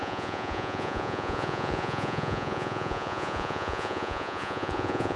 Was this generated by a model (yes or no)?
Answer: yes